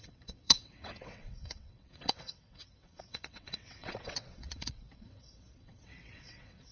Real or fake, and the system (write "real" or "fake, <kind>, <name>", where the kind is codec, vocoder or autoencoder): fake, vocoder, WaveNeXt